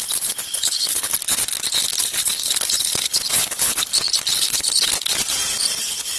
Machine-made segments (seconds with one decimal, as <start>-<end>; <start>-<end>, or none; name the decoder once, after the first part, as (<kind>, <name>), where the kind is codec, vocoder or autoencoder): 0.0-1.1 (codec, HILCodec); 2.0-3.9; 4.4-4.9; 5.8-6.2